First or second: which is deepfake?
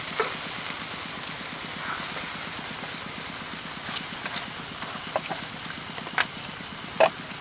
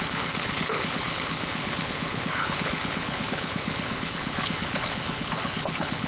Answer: second